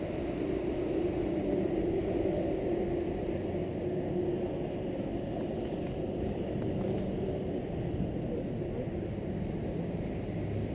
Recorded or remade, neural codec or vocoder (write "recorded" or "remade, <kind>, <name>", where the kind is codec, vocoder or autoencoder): recorded